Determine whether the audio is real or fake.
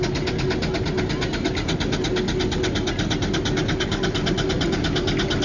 real